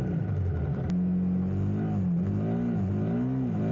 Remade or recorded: recorded